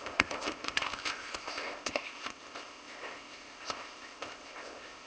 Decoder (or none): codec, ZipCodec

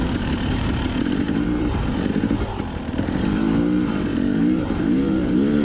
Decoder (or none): vocoder, BigVGAN v2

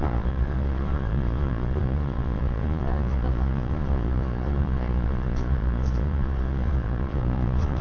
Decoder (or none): vocoder, Vocos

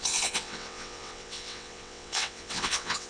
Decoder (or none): vocoder, WaveNeXt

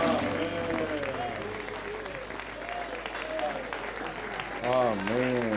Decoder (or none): none